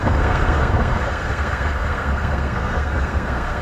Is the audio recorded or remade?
remade